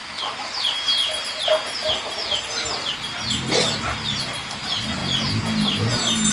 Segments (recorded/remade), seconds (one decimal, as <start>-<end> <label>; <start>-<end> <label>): 0.0-6.3 recorded

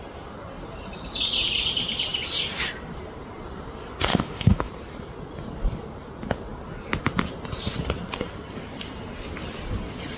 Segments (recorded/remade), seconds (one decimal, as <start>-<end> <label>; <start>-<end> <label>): 0.0-4.1 recorded; 4.1-4.7 remade; 4.7-10.2 recorded